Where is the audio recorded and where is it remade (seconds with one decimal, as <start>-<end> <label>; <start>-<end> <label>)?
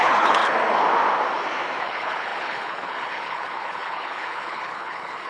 0.0-0.4 remade; 0.4-1.8 recorded; 1.8-5.3 remade